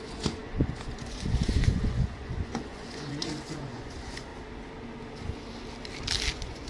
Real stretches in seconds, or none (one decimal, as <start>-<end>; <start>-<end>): 4.3-6.3